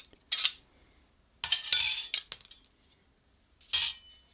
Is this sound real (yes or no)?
yes